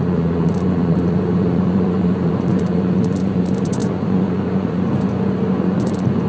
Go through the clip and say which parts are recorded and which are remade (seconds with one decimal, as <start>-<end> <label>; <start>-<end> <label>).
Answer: 0.0-6.3 remade